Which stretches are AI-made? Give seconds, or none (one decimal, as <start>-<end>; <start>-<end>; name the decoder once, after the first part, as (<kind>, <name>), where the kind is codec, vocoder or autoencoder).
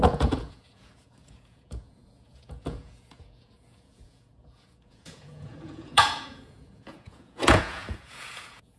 0.0-8.8 (vocoder, Vocos)